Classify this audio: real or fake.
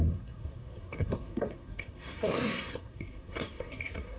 fake